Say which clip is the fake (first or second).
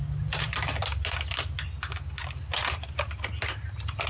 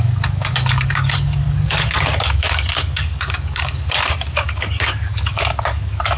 second